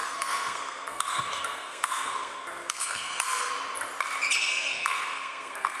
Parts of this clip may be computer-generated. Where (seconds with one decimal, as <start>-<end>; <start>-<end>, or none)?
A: 0.0-3.5; 4.5-5.8